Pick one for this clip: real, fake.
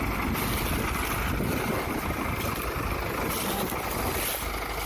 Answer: real